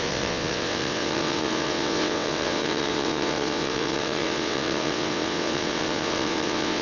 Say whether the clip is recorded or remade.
remade